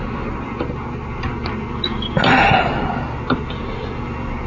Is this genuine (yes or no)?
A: yes